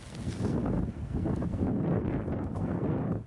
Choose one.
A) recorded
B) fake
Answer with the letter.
B